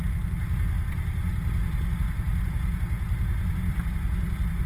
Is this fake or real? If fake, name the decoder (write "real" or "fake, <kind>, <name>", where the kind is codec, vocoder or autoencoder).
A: real